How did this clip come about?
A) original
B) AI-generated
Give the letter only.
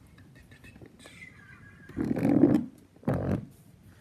B